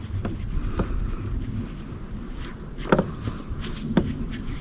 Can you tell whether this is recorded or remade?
recorded